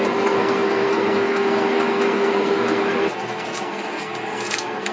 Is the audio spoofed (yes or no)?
yes